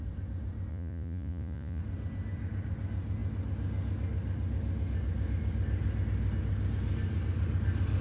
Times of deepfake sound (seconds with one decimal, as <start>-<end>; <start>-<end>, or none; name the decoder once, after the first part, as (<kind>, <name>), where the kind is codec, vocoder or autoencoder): 0.7-1.8 (vocoder, Vocos)

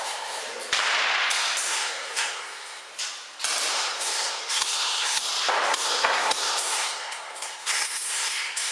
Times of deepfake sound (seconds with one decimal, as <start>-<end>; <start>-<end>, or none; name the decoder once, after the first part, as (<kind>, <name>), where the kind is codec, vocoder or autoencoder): 0.0-0.4 (codec, SNAC); 1.7-2.9; 3.7-5.2; 5.7-8.7

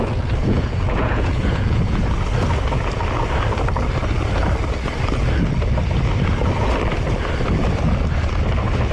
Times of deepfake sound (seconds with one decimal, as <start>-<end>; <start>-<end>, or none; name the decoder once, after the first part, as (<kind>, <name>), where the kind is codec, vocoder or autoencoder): 0.4-2.0 (vocoder, Vocos)

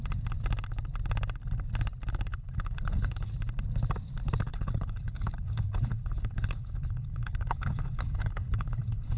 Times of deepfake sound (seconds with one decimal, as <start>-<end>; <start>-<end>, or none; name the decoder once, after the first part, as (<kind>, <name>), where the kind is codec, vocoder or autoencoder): 2.3-3.3 (codec, HILCodec); 4.5-9.2